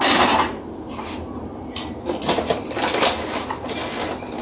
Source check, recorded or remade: recorded